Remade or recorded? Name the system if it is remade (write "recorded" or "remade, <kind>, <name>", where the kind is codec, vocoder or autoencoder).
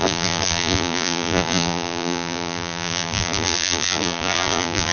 remade, vocoder, BigVGAN v2